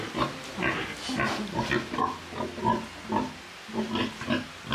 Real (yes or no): yes